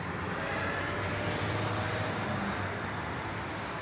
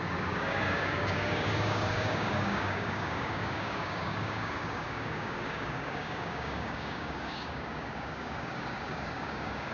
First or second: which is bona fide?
first